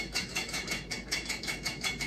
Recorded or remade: remade